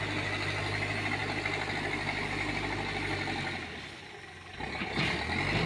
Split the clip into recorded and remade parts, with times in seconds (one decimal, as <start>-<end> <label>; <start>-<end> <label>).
0.0-5.7 recorded